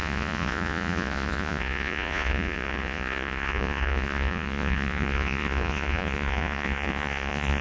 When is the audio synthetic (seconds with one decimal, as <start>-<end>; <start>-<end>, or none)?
0.0-7.6